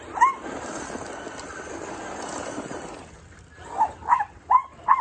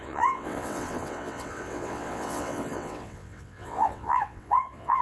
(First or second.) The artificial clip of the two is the second